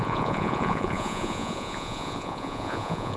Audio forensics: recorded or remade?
remade